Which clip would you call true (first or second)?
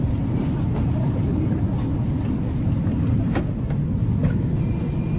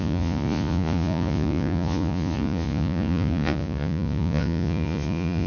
first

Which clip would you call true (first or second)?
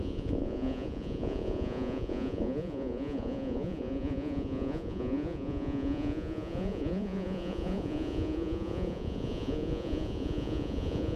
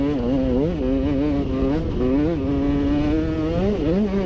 second